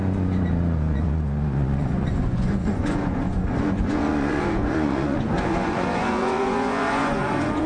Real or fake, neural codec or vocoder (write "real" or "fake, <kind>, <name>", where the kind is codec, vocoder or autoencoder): fake, vocoder, Vocos